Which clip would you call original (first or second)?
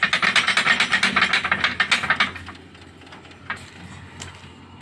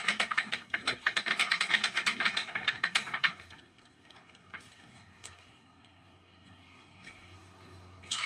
first